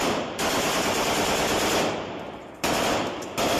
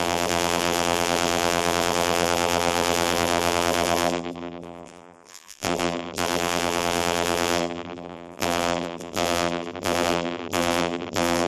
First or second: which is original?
first